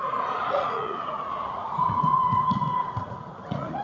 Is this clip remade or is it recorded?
remade